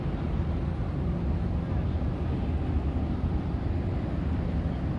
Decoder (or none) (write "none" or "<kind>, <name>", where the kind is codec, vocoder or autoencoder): none